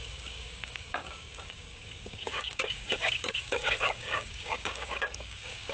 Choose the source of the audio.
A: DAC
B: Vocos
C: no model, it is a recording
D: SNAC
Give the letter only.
A